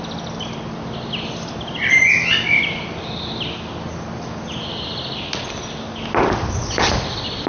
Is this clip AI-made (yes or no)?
no